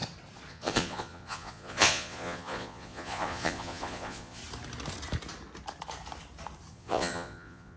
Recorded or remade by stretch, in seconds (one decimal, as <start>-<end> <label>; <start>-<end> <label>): 0.0-0.5 recorded; 0.5-4.4 remade; 4.4-6.7 recorded; 6.7-7.8 remade